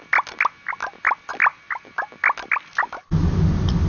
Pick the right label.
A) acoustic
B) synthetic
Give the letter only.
A